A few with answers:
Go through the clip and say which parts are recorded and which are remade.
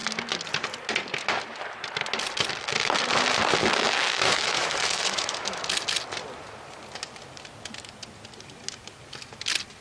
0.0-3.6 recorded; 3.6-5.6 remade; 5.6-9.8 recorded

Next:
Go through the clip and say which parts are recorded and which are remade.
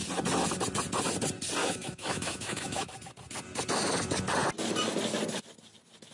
0.0-1.6 recorded; 1.6-2.9 remade; 2.9-6.1 recorded